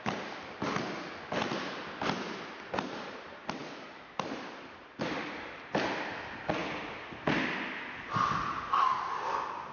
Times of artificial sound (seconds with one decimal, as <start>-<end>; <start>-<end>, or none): none